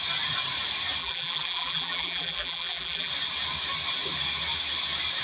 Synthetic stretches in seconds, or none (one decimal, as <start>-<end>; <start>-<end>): 1.0-3.1